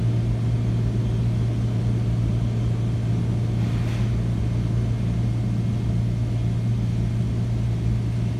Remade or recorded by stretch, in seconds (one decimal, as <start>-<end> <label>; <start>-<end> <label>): 0.0-8.4 recorded